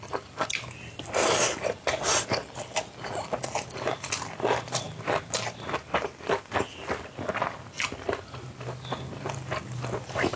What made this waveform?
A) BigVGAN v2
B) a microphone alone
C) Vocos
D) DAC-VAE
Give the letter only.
B